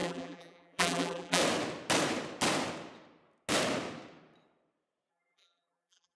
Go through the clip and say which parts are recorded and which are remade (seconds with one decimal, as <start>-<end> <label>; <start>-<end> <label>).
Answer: 0.0-1.4 remade; 1.4-5.1 recorded; 5.1-6.2 remade